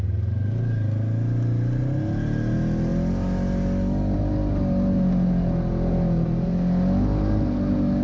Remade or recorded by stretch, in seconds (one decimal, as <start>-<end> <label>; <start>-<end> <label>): 0.0-8.0 recorded